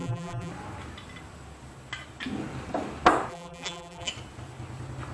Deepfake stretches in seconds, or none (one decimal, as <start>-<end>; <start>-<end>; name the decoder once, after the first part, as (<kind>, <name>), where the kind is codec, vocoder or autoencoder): 0.0-0.5 (vocoder, BigVGAN v2); 3.3-4.1